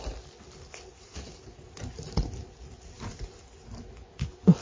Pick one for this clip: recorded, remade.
recorded